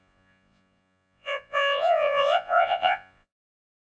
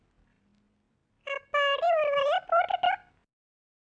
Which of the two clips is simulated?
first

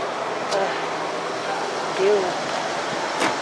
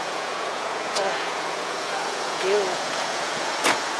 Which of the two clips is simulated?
second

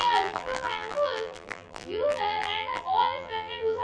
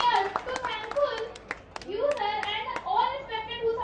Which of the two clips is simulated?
first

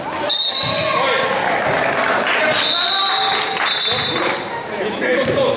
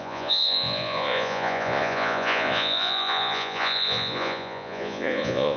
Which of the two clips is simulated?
second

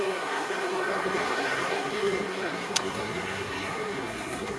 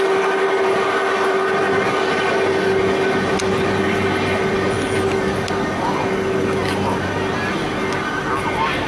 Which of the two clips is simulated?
first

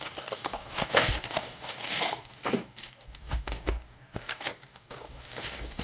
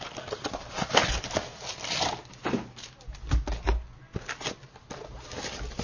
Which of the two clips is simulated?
first